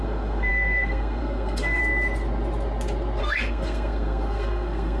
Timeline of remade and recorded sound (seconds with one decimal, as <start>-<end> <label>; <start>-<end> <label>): 0.0-1.8 remade; 1.8-3.2 recorded; 3.2-5.0 remade